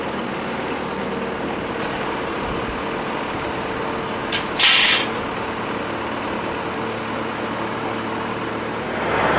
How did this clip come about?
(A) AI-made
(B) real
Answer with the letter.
B